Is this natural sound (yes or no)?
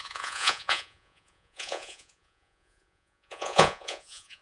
no